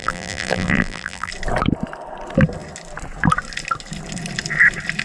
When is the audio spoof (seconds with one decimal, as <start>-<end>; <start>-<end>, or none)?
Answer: 0.0-1.3